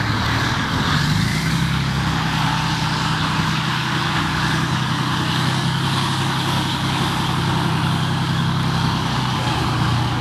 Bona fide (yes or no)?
no